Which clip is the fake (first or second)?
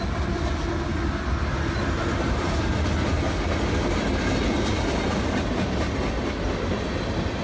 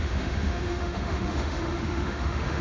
second